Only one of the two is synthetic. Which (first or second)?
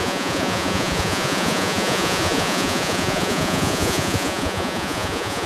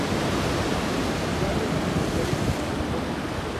first